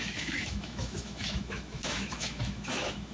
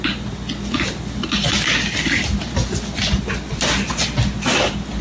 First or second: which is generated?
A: first